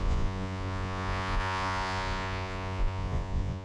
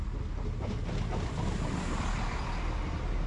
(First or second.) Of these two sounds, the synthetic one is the first